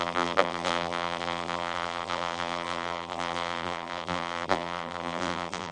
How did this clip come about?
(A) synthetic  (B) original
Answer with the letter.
A